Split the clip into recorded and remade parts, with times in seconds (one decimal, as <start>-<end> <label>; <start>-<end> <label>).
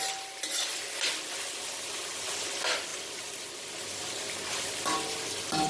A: 0.0-5.7 recorded